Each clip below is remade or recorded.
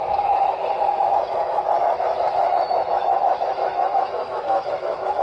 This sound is remade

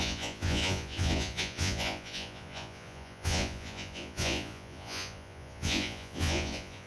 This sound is remade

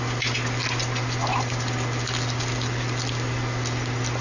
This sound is recorded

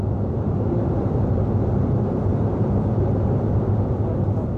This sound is remade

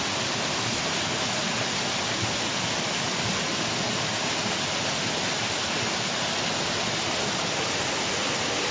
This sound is recorded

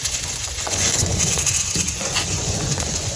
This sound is remade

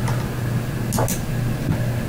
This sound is recorded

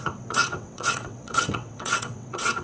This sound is remade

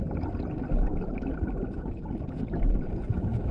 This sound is recorded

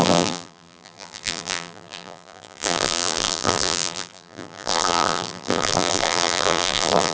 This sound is remade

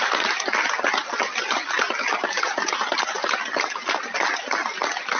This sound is recorded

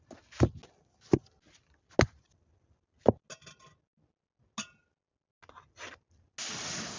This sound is recorded